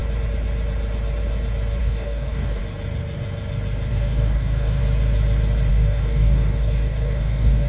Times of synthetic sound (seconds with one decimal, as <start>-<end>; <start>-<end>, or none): 1.8-2.6; 3.9-4.8; 5.7-7.7